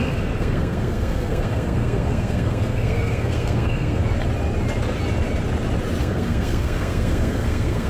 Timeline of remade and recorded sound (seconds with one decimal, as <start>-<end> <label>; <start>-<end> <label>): 0.0-4.0 remade; 4.0-6.0 recorded; 6.0-7.9 remade